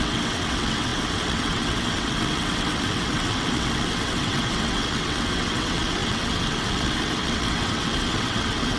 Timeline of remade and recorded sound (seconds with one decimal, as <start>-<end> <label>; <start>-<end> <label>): 0.0-8.8 remade